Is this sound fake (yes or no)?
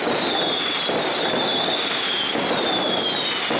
no